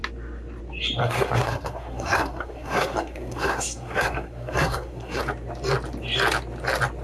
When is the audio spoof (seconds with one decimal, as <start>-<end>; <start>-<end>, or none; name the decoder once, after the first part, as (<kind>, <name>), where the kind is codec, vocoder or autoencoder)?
1.0-5.2 (codec, SNAC)